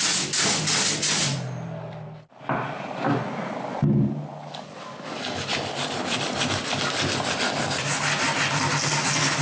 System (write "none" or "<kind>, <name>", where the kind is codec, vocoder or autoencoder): none